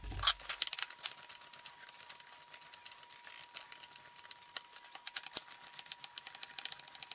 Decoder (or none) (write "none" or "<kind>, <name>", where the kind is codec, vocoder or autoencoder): none